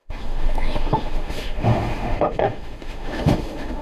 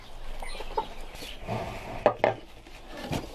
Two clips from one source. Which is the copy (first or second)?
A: first